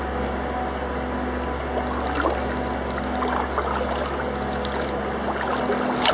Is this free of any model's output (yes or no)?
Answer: yes